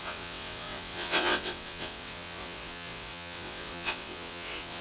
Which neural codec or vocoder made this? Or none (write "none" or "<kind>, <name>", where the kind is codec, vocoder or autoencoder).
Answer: vocoder, WaveNeXt